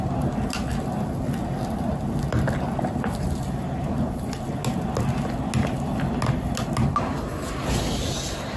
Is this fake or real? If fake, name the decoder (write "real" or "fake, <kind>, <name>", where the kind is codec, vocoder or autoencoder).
real